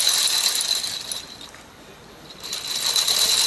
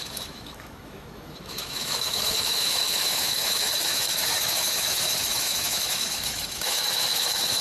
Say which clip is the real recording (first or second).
first